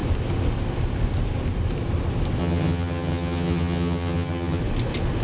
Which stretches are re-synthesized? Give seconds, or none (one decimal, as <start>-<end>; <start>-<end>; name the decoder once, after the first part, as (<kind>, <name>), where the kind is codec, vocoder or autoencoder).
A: 2.4-4.6 (vocoder, HiFi-GAN)